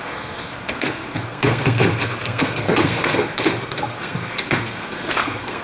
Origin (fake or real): fake